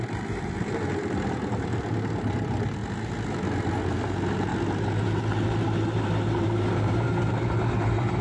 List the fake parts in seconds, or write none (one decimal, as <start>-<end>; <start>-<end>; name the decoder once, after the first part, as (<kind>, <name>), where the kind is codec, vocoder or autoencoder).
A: 0.0-2.8 (vocoder, BigVGAN v2); 3.9-4.5; 5.0-8.2